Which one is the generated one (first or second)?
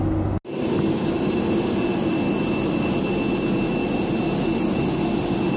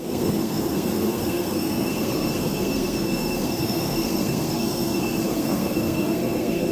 second